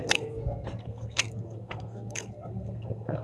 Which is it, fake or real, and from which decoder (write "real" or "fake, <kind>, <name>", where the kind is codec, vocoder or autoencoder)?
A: fake, codec, SNAC